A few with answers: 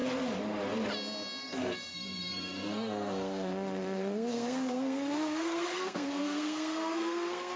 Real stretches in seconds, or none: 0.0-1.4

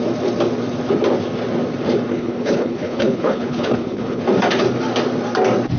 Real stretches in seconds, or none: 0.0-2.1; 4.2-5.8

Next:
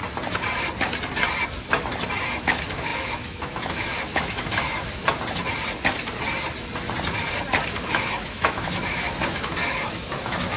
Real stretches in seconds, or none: 0.0-2.4; 5.0-7.8